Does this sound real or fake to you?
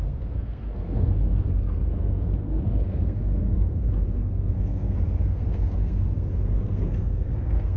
fake